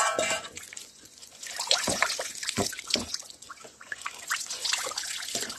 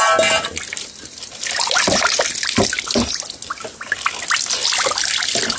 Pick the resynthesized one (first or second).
first